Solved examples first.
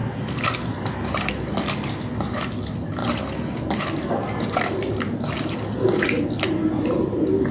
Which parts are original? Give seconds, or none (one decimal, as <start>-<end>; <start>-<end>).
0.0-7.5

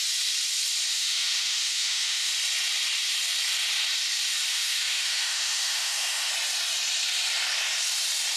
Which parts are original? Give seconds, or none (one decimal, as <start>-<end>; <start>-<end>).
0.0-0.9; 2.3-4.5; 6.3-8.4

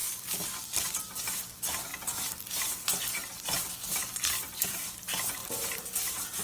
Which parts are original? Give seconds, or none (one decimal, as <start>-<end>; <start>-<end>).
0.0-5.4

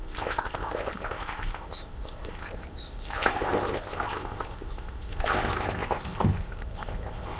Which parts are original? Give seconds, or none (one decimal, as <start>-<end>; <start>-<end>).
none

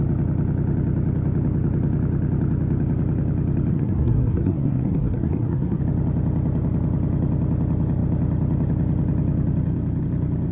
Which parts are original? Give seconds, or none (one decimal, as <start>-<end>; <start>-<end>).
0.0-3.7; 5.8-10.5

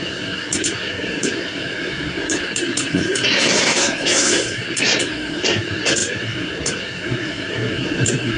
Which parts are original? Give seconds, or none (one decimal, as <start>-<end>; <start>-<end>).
none

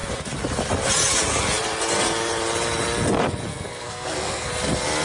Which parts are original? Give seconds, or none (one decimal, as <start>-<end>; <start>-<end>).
0.0-3.5; 4.5-5.0